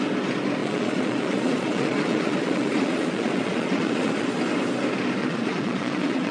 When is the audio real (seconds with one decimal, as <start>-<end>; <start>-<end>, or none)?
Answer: 0.0-0.6; 4.4-5.2